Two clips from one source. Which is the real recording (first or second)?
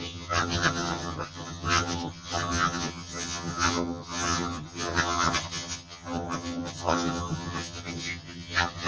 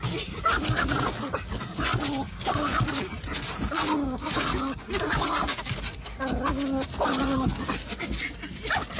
second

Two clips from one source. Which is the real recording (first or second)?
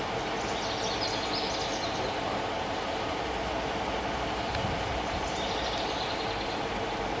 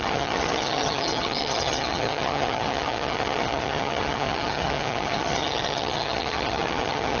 first